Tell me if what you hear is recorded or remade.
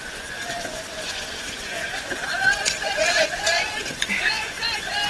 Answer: remade